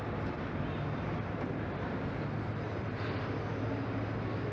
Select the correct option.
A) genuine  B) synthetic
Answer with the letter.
A